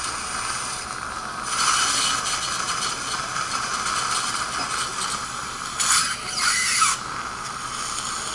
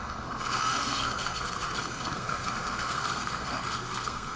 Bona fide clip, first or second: first